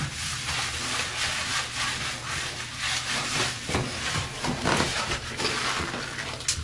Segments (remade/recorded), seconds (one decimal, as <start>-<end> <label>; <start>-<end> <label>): 0.0-4.9 recorded; 4.9-5.4 remade; 5.4-6.6 recorded